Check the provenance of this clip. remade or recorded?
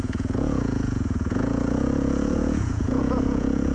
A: remade